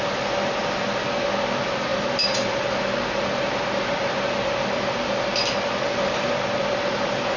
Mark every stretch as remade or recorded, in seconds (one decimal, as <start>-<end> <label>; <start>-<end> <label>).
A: 0.0-7.4 recorded